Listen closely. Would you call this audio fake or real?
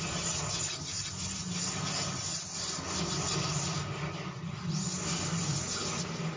real